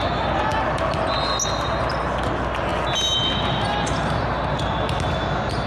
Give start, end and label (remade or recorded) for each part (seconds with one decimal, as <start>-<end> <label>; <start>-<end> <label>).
0.0-5.7 recorded